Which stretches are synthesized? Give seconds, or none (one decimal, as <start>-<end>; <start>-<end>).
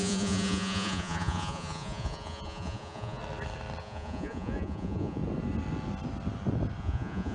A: 0.0-3.2; 3.8-5.2; 6.8-7.3